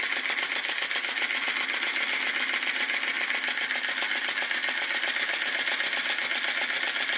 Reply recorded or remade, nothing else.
recorded